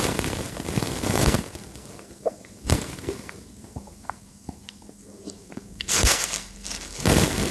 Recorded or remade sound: remade